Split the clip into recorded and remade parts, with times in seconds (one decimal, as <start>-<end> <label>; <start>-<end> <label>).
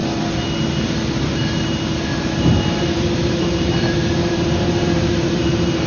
0.0-1.2 recorded; 1.2-5.9 remade